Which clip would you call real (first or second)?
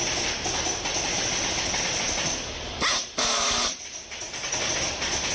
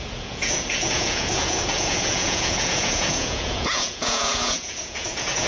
first